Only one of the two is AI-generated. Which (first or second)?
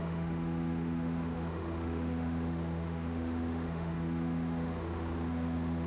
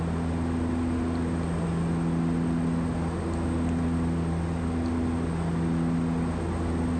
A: first